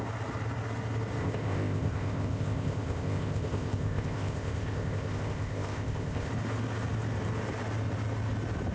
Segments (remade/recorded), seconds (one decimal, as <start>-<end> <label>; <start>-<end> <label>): 0.0-1.2 recorded; 1.2-6.3 remade; 6.3-8.7 recorded